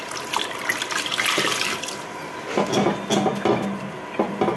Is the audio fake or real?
real